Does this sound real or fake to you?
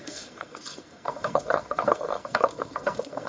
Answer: fake